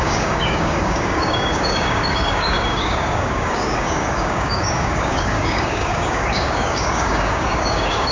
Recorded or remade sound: remade